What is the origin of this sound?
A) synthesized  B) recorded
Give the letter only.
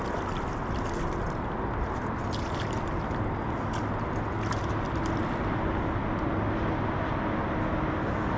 B